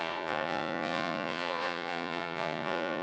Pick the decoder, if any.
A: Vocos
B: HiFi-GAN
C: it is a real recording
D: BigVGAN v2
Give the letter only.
A